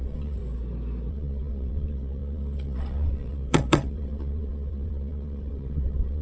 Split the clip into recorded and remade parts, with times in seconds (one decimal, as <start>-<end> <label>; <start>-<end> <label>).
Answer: 0.0-0.4 remade; 0.4-1.1 recorded; 1.1-6.2 remade